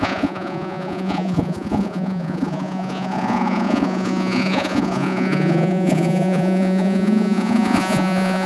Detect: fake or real fake